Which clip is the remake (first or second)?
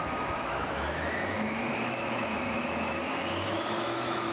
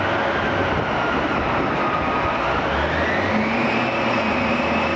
first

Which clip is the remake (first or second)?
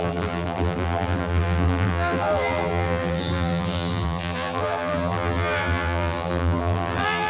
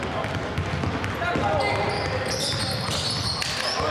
first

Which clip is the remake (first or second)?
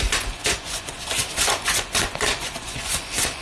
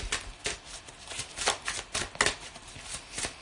first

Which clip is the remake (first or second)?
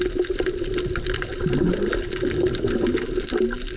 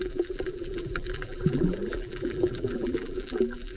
second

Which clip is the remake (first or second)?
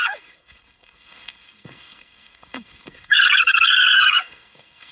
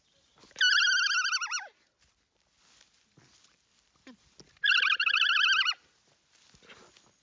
first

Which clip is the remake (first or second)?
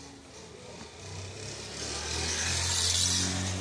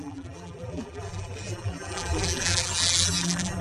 second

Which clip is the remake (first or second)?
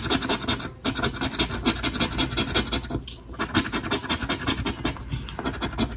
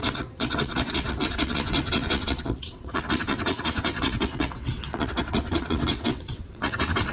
second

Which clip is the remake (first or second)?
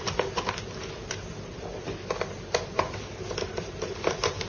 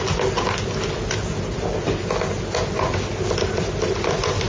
first